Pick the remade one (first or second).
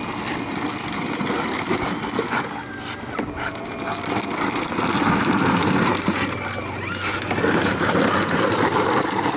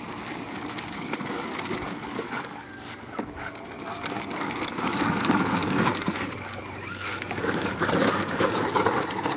second